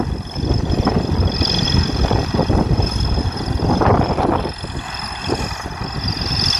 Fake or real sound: real